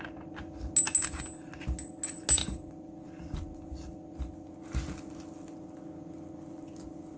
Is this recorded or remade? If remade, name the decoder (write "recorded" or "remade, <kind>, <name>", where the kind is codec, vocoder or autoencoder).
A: recorded